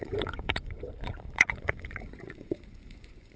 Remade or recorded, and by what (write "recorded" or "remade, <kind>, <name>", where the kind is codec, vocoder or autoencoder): remade, vocoder, Vocos